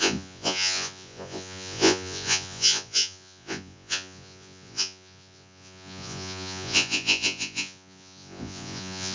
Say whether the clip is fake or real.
fake